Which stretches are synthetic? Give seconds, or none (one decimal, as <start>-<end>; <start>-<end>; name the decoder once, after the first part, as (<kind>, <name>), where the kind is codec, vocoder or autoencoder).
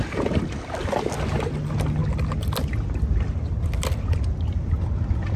none